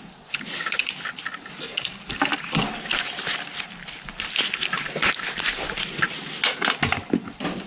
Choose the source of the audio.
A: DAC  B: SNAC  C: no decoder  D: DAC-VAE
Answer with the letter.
C